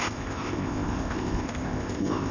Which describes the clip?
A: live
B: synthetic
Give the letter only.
B